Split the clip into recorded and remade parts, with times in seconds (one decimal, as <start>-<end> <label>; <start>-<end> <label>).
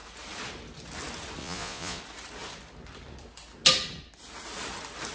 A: 0.0-1.4 recorded; 1.4-2.0 remade; 2.0-5.1 recorded